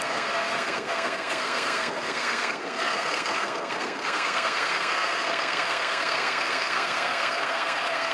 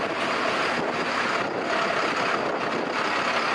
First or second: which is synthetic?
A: first